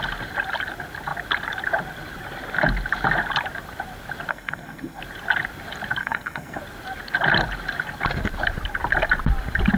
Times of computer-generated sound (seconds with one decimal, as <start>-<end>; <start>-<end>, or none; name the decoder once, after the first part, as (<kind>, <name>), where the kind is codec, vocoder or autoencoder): 4.3-5.0 (codec, SNAC); 6.0-6.6